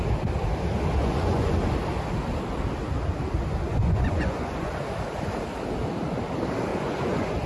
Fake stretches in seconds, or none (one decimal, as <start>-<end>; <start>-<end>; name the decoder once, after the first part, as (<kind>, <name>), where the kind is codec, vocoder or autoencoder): 1.0-1.5 (vocoder, Vocos); 3.7-4.7; 6.7-7.5